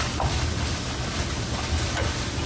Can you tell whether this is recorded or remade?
recorded